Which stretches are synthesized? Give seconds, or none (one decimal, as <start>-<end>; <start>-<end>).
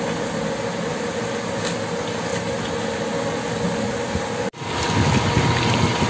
none